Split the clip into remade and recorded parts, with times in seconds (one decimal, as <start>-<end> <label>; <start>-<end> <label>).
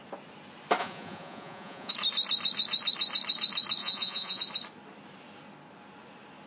0.0-0.8 recorded; 0.8-1.9 remade; 1.9-3.8 recorded; 3.8-4.4 remade; 4.4-6.5 recorded